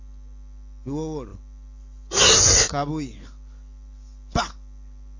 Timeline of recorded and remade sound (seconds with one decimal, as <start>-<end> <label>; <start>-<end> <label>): 0.0-5.2 recorded